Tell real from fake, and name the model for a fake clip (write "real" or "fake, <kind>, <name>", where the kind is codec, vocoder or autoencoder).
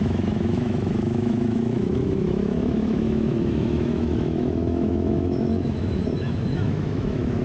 fake, autoencoder, DAC-VAE